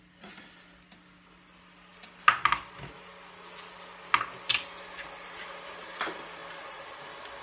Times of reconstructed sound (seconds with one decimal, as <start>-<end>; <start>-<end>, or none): none